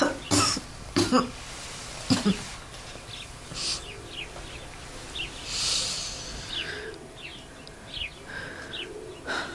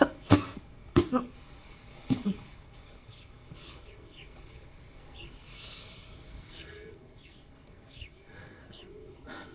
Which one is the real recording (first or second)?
first